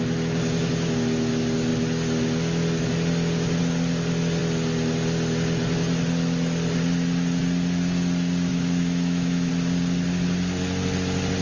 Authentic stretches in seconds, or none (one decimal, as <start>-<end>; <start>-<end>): 0.0-8.5; 9.5-11.4